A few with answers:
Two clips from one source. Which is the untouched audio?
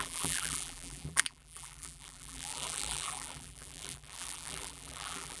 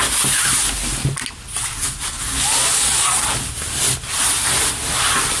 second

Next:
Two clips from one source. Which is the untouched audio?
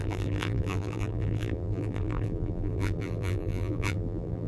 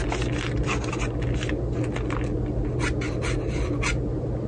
second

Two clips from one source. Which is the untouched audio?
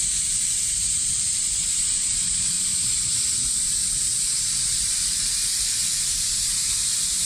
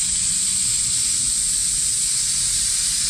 second